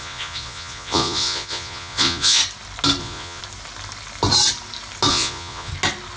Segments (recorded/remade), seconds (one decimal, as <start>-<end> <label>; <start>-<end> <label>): 0.0-2.4 remade; 2.4-3.0 recorded; 3.0-3.4 remade; 3.4-5.1 recorded; 5.1-5.7 remade; 5.7-6.2 recorded